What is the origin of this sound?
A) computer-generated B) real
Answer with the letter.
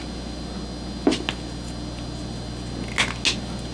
B